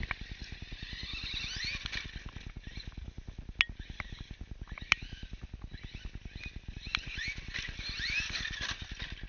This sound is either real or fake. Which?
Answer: real